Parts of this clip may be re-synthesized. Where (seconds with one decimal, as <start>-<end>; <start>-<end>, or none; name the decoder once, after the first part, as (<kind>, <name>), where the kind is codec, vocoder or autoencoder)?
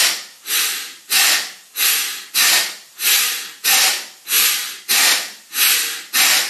none